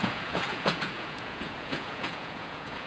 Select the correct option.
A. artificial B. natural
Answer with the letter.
A